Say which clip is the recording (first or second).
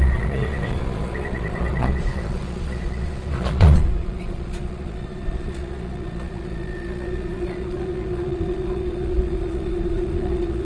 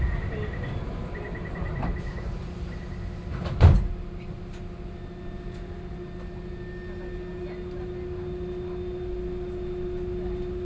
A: second